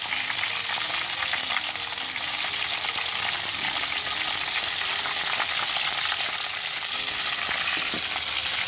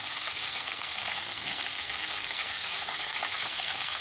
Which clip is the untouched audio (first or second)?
first